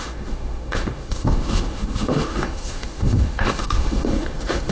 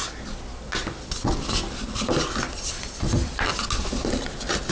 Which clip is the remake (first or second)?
first